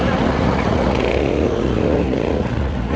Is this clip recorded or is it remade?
remade